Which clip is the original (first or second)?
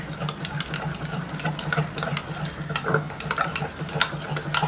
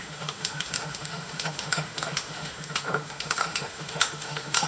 first